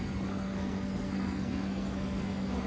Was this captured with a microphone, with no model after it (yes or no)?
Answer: no